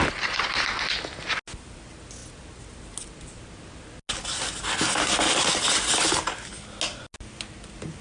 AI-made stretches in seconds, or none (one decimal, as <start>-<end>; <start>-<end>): none